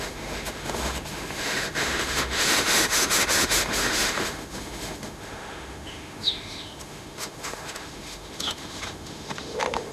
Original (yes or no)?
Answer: no